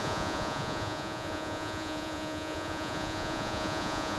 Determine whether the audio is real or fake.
fake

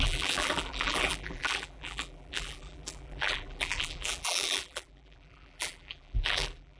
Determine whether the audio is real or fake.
fake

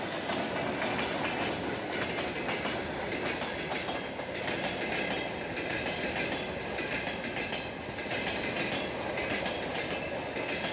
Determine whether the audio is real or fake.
real